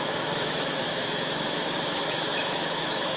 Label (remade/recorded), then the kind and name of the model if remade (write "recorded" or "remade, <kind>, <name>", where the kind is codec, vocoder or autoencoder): remade, autoencoder, DAC-VAE